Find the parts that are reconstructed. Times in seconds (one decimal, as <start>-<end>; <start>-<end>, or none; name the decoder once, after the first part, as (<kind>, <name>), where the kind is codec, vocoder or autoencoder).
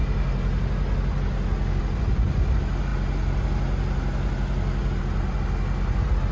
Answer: none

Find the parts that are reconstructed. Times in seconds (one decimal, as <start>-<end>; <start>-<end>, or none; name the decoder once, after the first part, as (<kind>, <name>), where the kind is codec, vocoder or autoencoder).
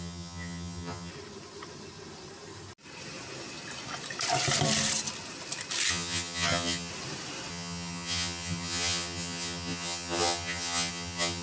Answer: 0.0-1.1 (vocoder, HiFi-GAN); 5.9-6.9; 7.5-11.4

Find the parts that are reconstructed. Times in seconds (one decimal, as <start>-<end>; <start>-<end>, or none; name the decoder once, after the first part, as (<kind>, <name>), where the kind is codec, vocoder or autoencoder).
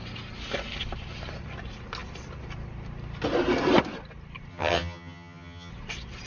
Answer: 4.5-5.7 (vocoder, HiFi-GAN)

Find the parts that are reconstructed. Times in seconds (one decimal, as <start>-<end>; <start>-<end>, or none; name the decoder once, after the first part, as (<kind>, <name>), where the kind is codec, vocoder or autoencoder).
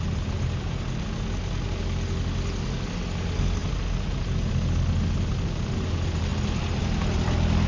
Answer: none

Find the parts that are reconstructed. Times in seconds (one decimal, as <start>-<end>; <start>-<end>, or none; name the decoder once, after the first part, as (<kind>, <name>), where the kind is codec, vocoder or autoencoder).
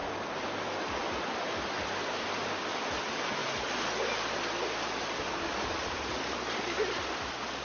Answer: none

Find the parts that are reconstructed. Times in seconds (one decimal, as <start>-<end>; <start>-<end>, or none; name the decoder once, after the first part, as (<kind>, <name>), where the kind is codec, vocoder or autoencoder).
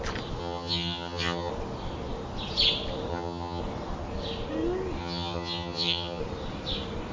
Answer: 0.4-1.5 (vocoder, HiFi-GAN); 3.1-3.6; 5.0-6.2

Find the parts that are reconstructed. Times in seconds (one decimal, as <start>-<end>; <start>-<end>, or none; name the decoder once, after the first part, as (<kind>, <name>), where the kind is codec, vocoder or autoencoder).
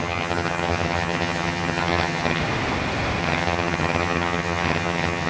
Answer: 0.0-2.4 (vocoder, HiFi-GAN); 3.2-5.3